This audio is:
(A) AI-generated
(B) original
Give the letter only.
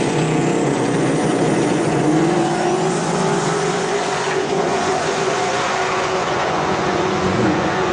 A